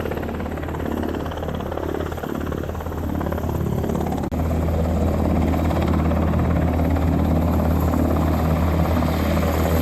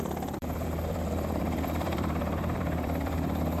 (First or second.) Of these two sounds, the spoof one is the second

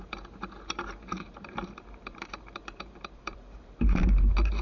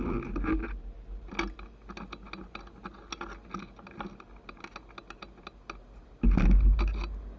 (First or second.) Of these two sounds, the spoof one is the first